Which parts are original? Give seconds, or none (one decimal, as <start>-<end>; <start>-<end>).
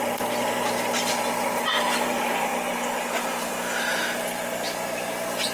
2.5-5.1